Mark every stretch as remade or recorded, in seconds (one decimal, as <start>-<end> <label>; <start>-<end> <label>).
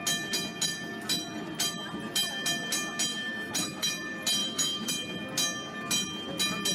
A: 0.0-3.1 recorded; 3.1-3.9 remade; 3.9-4.4 recorded; 4.4-4.9 remade; 4.9-6.7 recorded